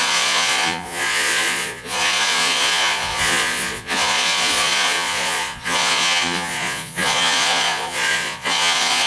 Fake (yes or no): yes